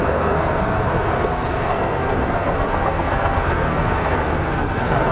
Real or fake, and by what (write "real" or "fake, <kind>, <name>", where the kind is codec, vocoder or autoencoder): fake, codec, SNAC